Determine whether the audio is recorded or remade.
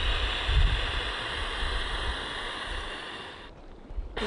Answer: recorded